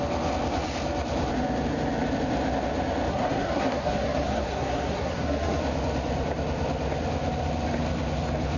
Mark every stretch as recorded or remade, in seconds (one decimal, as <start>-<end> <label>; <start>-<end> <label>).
0.0-3.1 recorded; 3.1-5.6 remade; 5.6-8.6 recorded